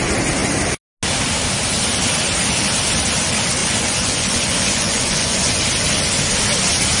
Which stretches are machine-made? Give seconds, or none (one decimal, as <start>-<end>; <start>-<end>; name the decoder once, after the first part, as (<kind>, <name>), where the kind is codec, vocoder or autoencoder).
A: 3.6-5.6 (vocoder, Vocos)